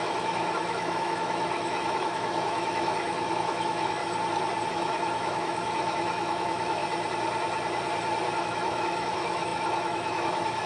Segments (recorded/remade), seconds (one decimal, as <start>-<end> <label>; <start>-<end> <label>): 0.0-4.0 remade; 4.0-4.7 recorded; 4.7-6.8 remade; 6.8-8.4 recorded; 8.4-10.7 remade